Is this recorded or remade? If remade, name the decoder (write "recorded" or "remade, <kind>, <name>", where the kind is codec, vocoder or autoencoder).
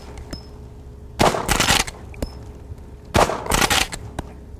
recorded